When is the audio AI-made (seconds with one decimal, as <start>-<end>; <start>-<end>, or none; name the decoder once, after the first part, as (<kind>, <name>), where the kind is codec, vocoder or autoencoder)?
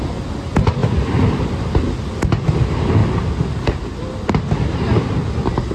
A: none